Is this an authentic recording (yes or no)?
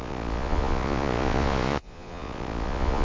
no